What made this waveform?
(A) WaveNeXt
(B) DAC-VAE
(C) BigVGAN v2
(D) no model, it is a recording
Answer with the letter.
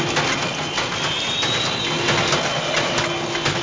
D